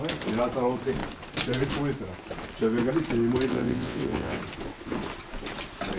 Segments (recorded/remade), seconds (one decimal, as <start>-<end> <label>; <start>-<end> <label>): 0.0-3.5 recorded; 3.5-4.4 remade; 4.4-6.0 recorded

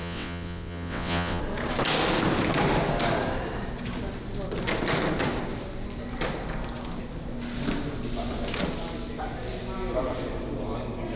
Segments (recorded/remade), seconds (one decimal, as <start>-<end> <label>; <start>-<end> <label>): 0.0-1.4 remade; 1.4-11.2 recorded